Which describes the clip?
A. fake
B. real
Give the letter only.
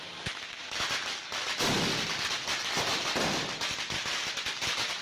B